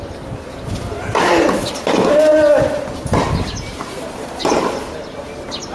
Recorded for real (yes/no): yes